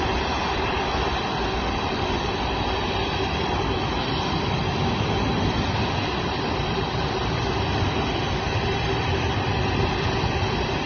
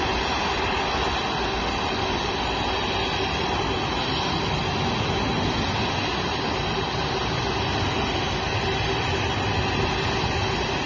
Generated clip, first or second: first